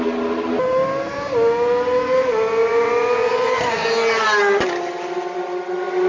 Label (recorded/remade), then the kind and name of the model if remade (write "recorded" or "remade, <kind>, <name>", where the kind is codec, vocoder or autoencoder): recorded